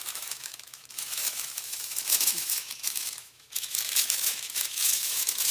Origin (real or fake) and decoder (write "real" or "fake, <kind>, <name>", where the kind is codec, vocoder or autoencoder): fake, autoencoder, DAC-VAE